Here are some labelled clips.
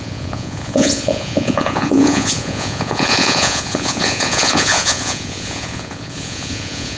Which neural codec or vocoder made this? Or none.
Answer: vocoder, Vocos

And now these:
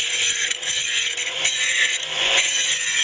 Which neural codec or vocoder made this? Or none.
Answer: vocoder, Vocos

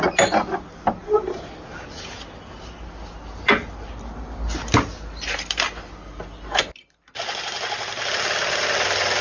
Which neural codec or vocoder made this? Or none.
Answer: none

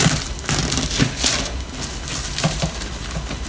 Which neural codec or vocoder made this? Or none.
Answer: none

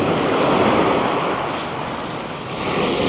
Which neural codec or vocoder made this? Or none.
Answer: none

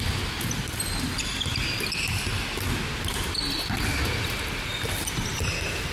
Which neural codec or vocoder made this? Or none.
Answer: none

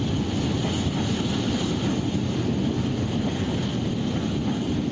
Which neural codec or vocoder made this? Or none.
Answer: none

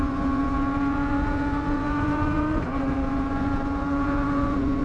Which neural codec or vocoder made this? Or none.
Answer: vocoder, Vocos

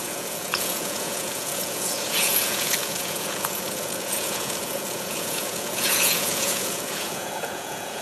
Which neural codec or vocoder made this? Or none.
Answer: vocoder, Vocos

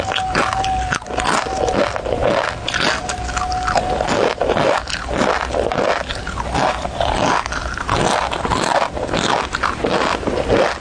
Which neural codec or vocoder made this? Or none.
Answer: none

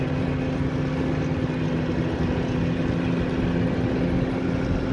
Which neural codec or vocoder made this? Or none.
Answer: none